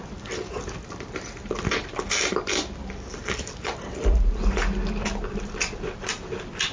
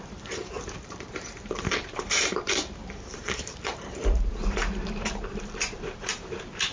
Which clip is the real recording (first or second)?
first